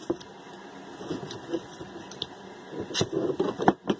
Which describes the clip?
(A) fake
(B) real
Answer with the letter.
B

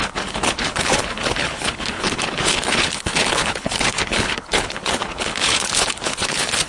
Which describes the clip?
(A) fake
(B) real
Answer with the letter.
A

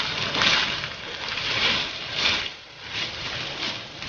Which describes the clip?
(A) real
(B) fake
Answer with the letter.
B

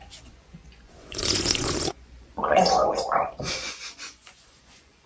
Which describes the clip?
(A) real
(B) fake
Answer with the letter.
B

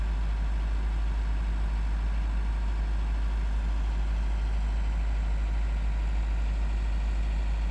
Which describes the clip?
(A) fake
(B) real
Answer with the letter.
B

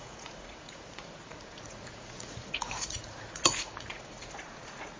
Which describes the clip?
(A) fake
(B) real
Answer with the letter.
A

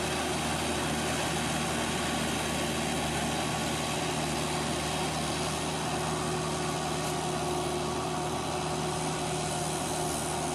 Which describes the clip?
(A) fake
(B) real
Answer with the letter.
B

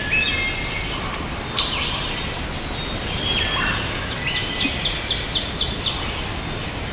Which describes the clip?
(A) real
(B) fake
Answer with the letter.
A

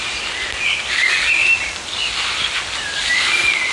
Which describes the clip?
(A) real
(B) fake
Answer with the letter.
A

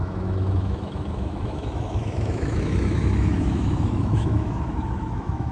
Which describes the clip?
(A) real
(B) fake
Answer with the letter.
B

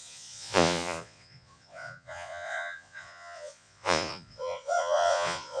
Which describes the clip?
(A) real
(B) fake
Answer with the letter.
B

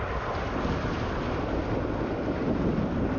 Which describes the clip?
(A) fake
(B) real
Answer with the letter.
B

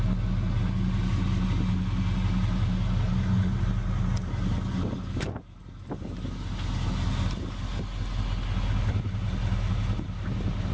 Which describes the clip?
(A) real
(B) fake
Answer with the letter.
A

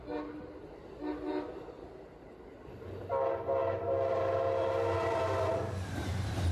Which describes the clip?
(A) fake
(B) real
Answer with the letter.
B